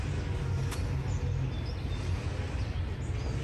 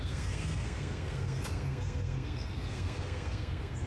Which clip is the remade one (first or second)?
second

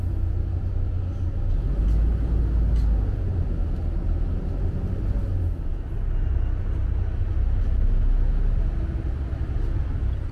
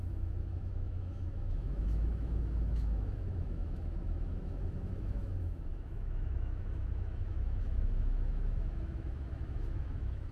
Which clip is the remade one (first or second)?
second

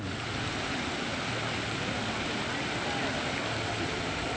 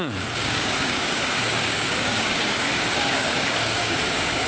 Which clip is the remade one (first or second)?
second